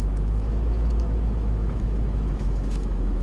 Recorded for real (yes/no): no